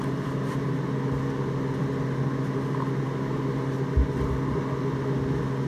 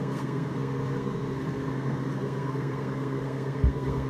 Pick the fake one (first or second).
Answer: second